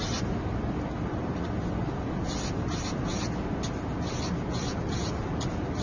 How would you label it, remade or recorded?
recorded